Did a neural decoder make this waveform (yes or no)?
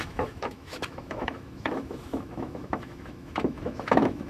yes